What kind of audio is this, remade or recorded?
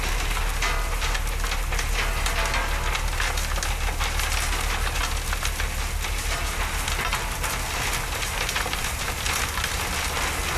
recorded